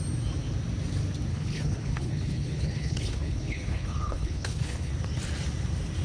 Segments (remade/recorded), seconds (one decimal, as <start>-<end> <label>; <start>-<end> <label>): 0.0-1.3 recorded; 1.3-4.9 remade; 4.9-6.0 recorded